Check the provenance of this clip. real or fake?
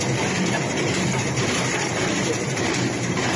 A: fake